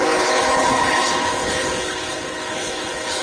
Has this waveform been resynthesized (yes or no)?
yes